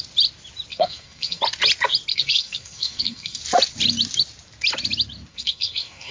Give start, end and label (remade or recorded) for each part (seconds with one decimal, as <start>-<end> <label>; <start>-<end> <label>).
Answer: 0.0-0.7 recorded; 0.7-1.4 remade; 1.4-2.1 recorded; 2.1-3.4 remade; 3.4-5.3 recorded; 5.3-6.1 remade